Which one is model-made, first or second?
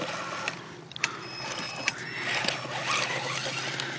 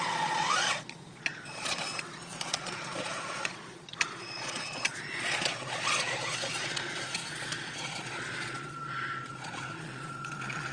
second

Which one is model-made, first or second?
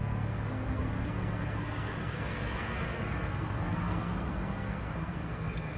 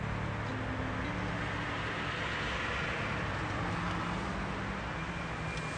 first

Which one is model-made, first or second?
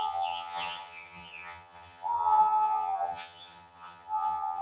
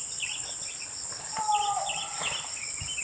first